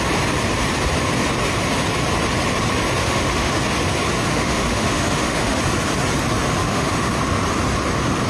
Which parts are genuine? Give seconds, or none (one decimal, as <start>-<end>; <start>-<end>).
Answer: 0.0-3.0; 3.6-4.3; 5.6-6.6; 7.2-8.3